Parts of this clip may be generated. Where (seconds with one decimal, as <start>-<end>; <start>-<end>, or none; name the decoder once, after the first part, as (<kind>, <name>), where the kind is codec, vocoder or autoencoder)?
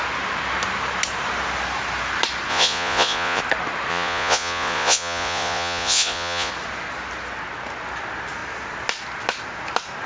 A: 2.5-3.4 (vocoder, Vocos); 3.9-6.5